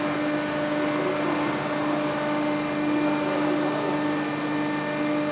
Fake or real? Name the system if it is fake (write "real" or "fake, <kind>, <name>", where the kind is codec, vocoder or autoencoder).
real